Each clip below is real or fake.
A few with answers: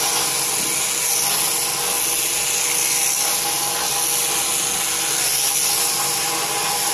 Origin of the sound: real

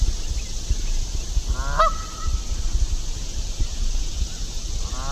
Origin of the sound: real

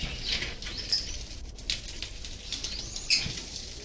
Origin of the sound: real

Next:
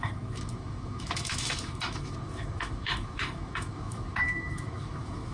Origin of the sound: fake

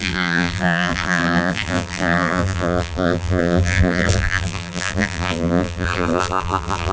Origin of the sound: fake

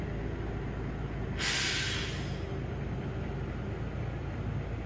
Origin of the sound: real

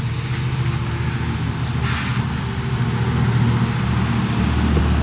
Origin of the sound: real